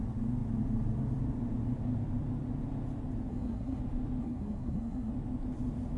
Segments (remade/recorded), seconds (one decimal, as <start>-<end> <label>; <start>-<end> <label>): 0.0-3.3 recorded; 3.3-3.8 remade; 3.8-4.2 recorded; 4.2-5.1 remade; 5.1-6.0 recorded